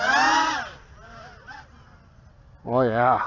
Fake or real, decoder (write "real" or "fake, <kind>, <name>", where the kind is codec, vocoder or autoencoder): real